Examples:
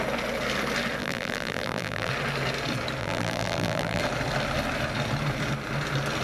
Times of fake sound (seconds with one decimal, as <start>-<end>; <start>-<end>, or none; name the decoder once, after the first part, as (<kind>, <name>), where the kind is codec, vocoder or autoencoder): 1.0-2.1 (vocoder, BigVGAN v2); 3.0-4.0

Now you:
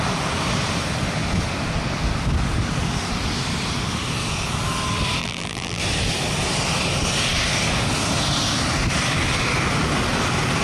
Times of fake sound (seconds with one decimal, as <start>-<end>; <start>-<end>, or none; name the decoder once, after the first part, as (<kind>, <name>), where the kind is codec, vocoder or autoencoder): 5.2-5.8 (vocoder, BigVGAN v2)

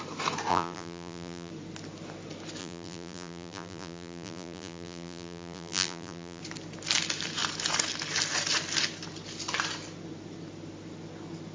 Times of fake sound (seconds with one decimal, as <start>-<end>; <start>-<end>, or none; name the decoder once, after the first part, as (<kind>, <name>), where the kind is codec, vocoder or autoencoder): 0.5-1.5 (vocoder, BigVGAN v2); 2.6-6.4